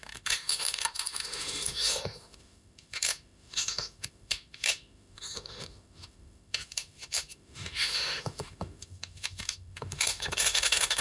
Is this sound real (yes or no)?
no